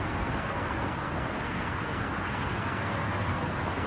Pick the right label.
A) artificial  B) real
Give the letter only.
A